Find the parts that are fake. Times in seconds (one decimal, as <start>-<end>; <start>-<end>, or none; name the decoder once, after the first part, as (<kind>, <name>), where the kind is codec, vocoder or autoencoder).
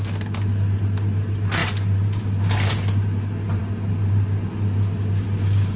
1.6-2.2 (vocoder, BigVGAN v2)